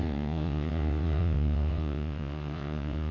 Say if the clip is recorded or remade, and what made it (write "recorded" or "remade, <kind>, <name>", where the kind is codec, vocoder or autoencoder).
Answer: remade, vocoder, WaveNeXt